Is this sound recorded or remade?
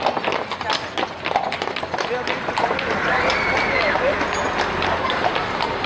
recorded